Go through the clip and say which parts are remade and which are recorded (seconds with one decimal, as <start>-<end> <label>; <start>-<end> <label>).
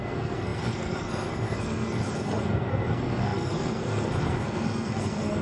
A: 0.0-5.4 remade